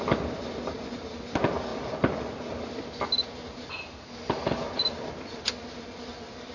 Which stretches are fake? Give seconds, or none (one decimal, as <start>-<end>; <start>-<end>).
none